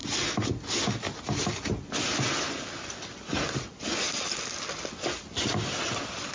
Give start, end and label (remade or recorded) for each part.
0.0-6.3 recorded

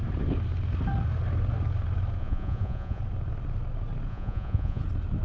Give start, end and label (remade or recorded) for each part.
0.0-2.2 recorded; 2.2-3.0 remade; 3.0-4.1 recorded; 4.1-4.8 remade; 4.8-5.2 recorded

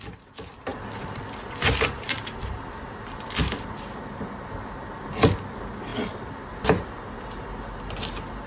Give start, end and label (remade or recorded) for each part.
0.0-8.5 recorded

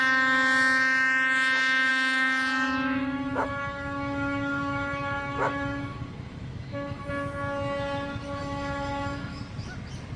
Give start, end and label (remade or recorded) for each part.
0.0-1.9 recorded; 1.9-7.1 remade; 7.1-8.4 recorded; 8.4-9.4 remade; 9.4-10.2 recorded

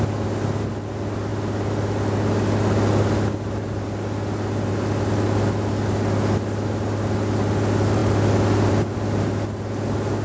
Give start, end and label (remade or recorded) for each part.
0.0-10.2 recorded

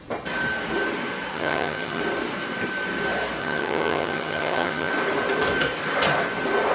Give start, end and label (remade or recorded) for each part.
0.0-1.3 recorded; 1.3-2.0 remade; 2.0-3.4 recorded; 3.4-4.9 remade; 4.9-6.7 recorded